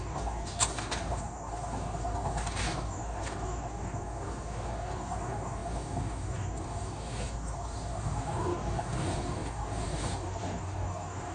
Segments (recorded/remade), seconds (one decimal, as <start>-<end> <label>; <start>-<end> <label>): 0.0-11.3 remade